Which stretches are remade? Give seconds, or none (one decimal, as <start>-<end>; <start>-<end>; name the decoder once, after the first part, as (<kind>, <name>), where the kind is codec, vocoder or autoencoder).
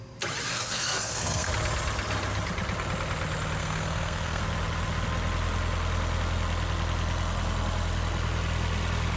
0.5-1.5 (codec, SNAC); 3.6-4.4